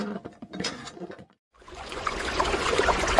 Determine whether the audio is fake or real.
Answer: fake